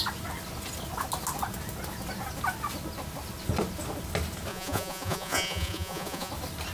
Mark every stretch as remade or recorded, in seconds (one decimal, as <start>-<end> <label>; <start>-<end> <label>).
0.0-4.5 recorded; 4.5-6.3 remade; 6.3-6.7 recorded